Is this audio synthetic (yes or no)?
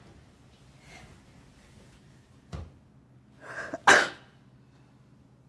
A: no